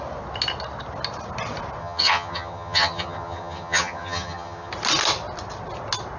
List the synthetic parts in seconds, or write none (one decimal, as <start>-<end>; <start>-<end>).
1.8-4.7